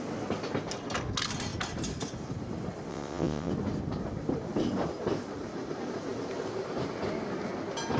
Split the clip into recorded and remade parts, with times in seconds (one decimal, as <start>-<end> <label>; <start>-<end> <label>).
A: 0.0-2.9 recorded; 2.9-3.5 remade; 3.5-8.0 recorded